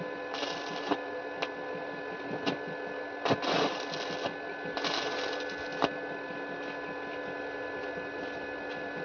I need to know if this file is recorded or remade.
recorded